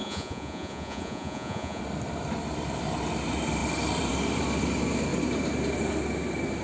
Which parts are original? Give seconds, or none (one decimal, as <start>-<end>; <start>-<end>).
1.8-6.6